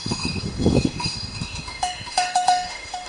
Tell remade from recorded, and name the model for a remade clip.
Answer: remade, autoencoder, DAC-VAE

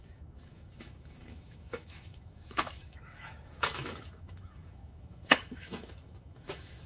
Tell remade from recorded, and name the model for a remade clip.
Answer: remade, autoencoder, DAC-VAE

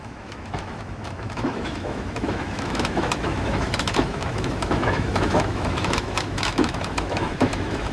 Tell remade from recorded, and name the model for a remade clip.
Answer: remade, autoencoder, DAC-VAE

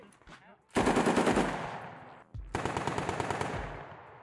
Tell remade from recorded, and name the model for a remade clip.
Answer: recorded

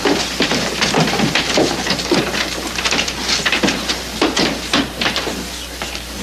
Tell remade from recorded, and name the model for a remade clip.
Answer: recorded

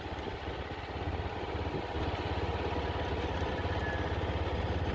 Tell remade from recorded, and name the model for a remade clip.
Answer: recorded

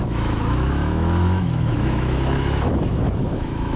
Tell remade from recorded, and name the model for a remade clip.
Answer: remade, autoencoder, DAC-VAE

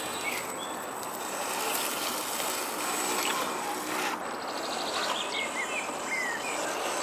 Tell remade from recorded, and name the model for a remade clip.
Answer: recorded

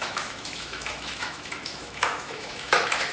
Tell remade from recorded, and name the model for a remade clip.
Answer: remade, autoencoder, DAC-VAE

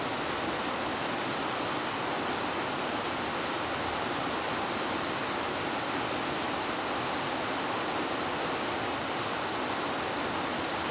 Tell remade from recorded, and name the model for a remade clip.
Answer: recorded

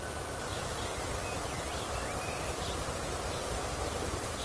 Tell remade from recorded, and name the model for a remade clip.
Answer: recorded